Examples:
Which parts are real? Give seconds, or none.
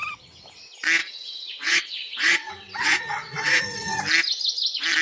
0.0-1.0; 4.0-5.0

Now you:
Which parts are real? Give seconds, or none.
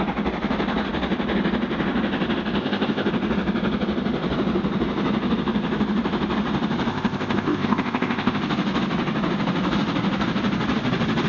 0.0-2.6; 3.1-6.9; 8.4-11.3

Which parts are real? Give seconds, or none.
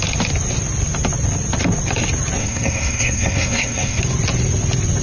0.0-2.4; 4.0-5.0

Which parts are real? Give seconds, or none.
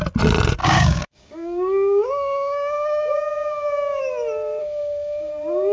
0.0-0.6; 4.0-4.6; 5.3-5.7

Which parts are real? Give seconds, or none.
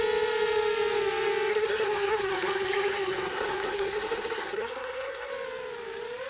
0.0-1.5; 5.3-6.3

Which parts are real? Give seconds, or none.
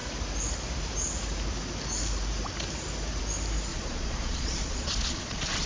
0.0-3.7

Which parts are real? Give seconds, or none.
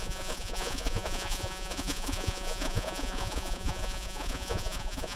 none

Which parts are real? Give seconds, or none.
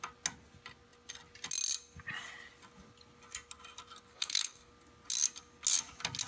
0.0-4.1; 4.7-6.3